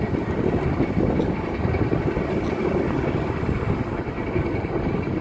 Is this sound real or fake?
fake